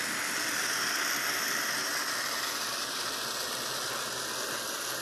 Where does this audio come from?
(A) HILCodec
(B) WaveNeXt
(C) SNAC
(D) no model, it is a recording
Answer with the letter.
D